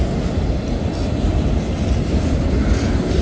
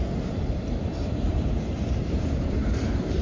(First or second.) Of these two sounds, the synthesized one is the second